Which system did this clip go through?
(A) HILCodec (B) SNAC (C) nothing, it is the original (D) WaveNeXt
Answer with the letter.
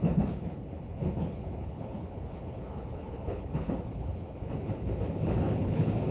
A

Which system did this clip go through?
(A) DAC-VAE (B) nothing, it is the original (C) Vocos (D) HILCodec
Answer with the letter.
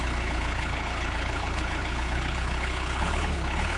D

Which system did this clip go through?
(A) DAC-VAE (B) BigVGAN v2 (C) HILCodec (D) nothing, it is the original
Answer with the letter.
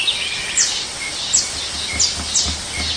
D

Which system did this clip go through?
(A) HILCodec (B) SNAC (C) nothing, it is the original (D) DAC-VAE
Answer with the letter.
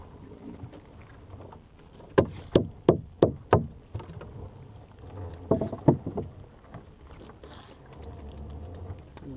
C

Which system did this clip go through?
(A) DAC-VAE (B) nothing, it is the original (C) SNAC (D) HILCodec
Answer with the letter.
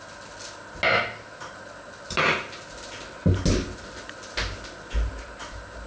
B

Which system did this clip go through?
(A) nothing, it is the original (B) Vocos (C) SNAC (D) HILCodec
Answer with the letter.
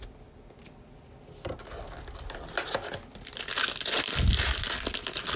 A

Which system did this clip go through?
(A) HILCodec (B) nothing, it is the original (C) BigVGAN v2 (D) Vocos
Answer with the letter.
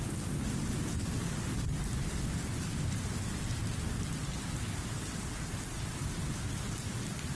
B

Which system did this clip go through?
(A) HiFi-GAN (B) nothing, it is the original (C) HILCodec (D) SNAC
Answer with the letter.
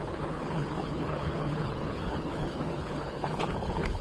C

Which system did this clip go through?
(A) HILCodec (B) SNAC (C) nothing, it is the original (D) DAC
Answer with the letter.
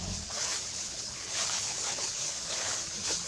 A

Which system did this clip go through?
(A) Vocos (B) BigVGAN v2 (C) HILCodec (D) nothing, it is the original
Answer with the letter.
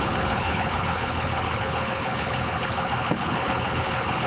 C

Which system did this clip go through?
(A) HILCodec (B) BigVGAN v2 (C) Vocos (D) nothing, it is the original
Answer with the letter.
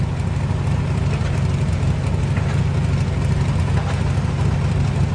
D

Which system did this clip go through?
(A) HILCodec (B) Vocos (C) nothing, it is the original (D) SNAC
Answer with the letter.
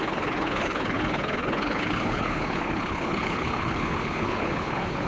A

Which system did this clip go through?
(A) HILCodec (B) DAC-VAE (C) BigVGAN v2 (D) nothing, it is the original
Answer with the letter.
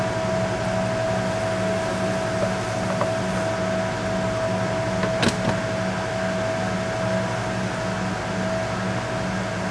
D